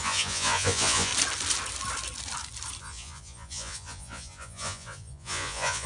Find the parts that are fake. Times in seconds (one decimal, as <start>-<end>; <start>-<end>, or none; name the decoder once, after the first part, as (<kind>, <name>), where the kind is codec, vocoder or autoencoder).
0.0-1.1 (vocoder, Vocos); 2.8-5.9